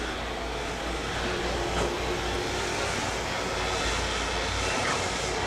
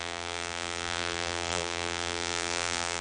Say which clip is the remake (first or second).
second